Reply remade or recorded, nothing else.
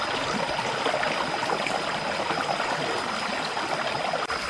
recorded